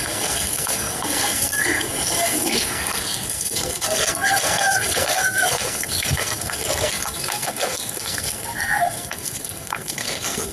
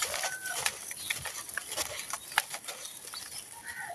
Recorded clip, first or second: second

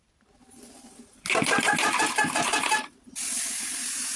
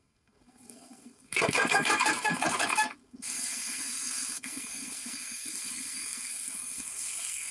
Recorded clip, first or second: first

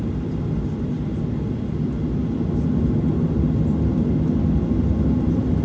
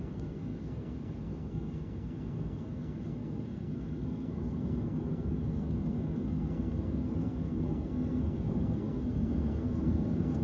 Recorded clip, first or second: first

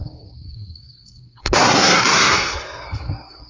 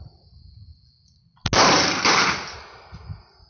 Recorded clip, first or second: second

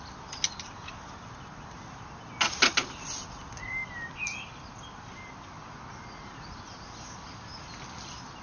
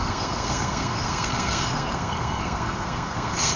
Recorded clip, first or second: first